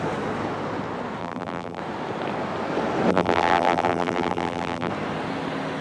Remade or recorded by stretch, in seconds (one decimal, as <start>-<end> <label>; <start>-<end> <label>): 0.0-1.2 recorded; 1.2-1.8 remade; 1.8-3.1 recorded; 3.1-4.9 remade; 4.9-5.8 recorded